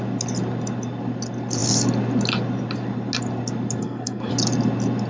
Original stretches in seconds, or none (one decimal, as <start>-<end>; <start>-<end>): 0.0-3.8; 4.3-5.1